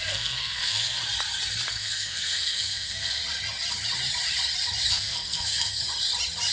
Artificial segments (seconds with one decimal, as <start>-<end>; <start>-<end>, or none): 0.0-1.0; 1.7-3.2; 4.9-5.8